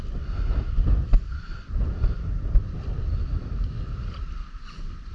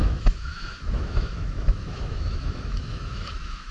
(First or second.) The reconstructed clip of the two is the second